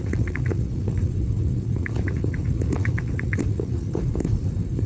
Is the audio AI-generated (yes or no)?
yes